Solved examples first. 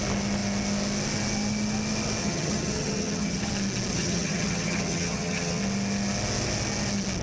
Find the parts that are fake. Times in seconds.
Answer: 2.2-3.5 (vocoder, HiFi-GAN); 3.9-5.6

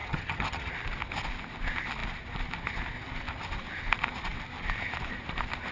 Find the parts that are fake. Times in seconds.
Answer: 0.0-0.7 (vocoder, HiFi-GAN)

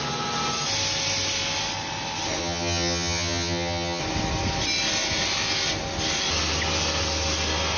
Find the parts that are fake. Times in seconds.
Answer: 2.4-4.0 (vocoder, HiFi-GAN)

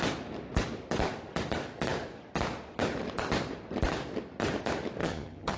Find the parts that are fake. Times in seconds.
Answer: 5.0-5.6 (vocoder, HiFi-GAN)

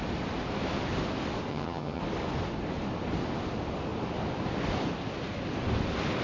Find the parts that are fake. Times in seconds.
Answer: 1.5-2.0 (vocoder, HiFi-GAN)

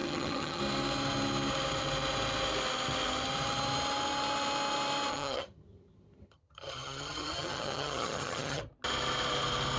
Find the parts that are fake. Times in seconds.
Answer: 0.0-0.6 (vocoder, HiFi-GAN); 5.1-8.6